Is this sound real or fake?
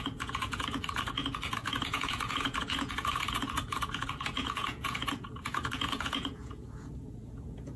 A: fake